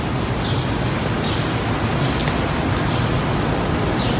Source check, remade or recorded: recorded